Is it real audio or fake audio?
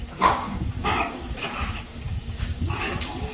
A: fake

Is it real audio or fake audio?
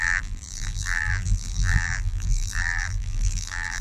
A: fake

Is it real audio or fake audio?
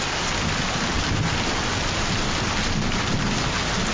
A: real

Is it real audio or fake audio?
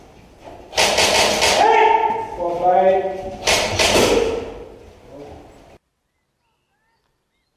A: real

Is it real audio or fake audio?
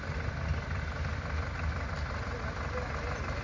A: real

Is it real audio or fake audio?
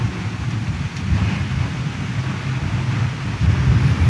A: real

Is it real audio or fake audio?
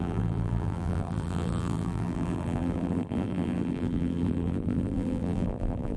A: fake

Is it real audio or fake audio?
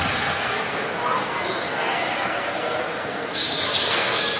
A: fake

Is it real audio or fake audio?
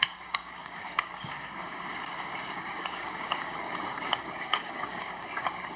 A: fake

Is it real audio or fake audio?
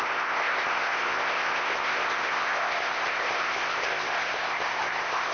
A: fake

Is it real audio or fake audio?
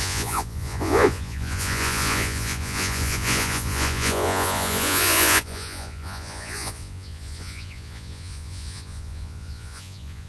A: fake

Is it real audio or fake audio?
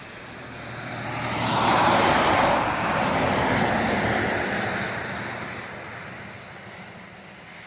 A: real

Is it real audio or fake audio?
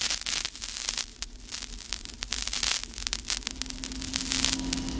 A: real